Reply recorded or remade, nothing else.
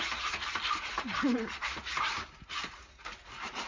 remade